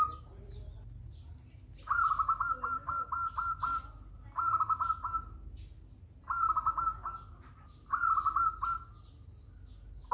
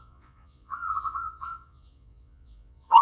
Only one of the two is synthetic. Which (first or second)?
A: second